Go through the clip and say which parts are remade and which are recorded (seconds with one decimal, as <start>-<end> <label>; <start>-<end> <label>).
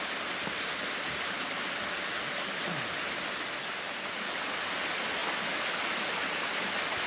0.0-7.1 recorded